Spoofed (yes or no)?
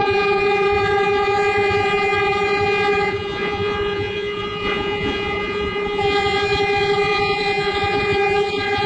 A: yes